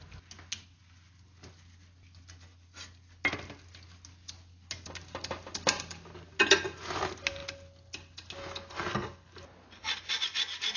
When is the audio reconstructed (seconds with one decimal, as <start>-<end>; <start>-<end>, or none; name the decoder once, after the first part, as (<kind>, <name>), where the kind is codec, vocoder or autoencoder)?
none